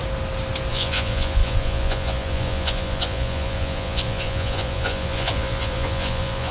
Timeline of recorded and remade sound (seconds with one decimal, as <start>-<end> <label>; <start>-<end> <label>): 0.0-0.7 recorded; 0.7-6.5 remade